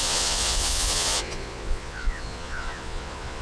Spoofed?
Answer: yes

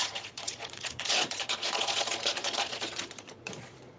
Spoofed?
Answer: yes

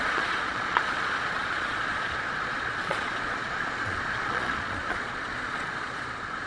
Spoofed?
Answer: yes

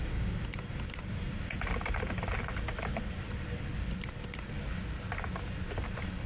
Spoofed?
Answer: no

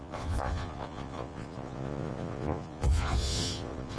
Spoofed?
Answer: yes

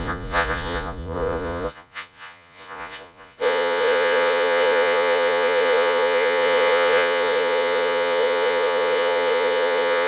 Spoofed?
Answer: yes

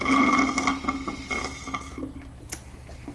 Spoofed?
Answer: no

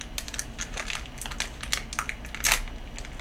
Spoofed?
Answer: no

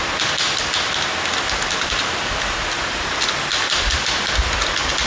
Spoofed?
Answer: no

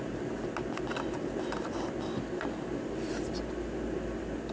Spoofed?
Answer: no